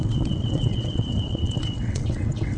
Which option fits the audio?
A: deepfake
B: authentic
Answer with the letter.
A